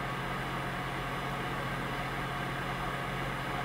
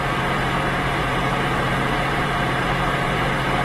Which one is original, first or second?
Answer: first